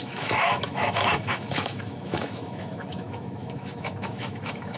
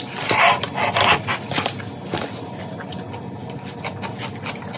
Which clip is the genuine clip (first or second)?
second